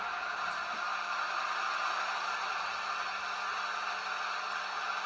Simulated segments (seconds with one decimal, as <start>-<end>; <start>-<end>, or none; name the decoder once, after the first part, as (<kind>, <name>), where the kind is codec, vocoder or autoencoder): none